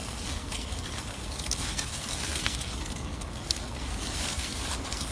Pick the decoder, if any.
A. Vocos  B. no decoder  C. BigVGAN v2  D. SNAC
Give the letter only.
D